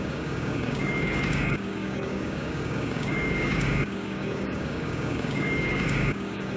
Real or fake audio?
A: fake